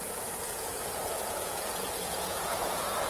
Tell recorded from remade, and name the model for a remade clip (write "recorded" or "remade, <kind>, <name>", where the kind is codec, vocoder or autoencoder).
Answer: remade, vocoder, Vocos